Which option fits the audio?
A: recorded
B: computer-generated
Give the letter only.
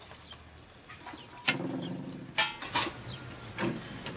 A